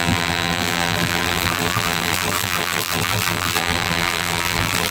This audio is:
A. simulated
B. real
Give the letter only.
A